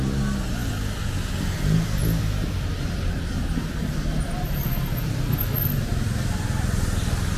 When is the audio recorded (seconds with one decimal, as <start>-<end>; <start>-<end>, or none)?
0.0-0.6; 1.1-7.4